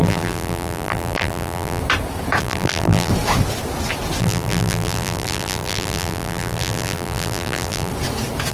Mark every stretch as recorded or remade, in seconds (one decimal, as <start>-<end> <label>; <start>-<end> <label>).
0.0-1.8 remade; 1.8-2.4 recorded; 2.4-3.1 remade; 3.1-4.2 recorded; 4.2-7.9 remade; 7.9-8.5 recorded